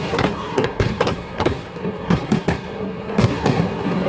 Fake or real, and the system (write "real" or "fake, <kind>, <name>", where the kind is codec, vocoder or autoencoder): fake, codec, SNAC